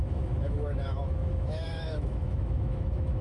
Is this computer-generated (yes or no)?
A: yes